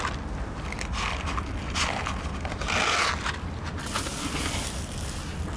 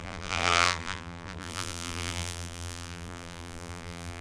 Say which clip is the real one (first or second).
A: first